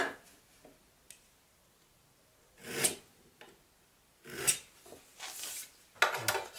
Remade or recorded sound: recorded